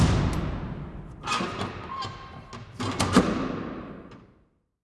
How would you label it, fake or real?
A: real